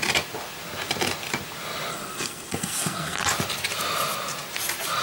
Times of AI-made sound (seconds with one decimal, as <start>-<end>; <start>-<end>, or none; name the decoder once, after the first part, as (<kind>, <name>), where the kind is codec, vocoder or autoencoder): 1.9-3.2 (codec, SNAC)